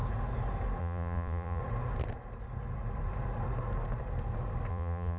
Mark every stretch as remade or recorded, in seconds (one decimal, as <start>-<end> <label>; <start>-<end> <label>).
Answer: 0.0-0.8 recorded; 0.8-1.6 remade; 1.6-4.7 recorded; 4.7-5.2 remade